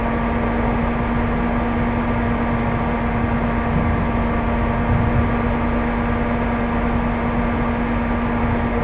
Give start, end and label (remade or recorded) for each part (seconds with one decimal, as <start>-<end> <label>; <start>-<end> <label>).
0.0-8.8 recorded